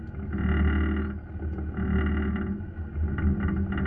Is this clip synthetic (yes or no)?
no